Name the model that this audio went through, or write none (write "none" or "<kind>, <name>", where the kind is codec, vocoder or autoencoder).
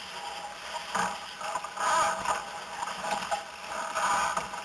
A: none